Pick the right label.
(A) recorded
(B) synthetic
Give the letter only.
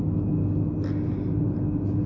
A